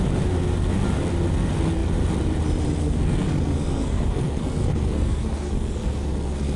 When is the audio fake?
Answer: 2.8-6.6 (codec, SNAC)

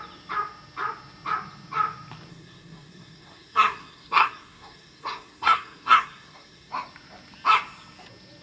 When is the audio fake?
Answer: 2.3-6.7 (codec, SNAC)

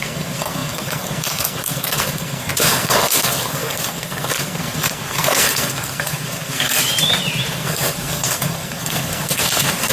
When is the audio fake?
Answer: 0.0-6.8 (codec, SNAC); 7.5-9.9

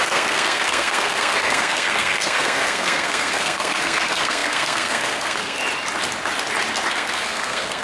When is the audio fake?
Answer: 0.0-5.6 (codec, SNAC); 6.9-7.8

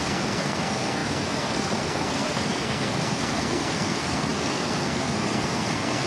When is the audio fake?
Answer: 0.0-6.1 (codec, SNAC)

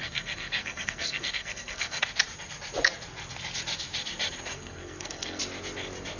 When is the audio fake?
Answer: 0.0-2.0 (codec, SNAC); 4.5-5.4

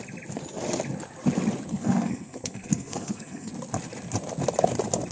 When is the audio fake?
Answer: 1.7-3.5 (codec, SNAC)